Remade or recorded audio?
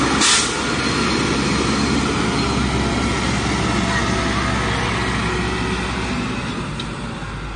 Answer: recorded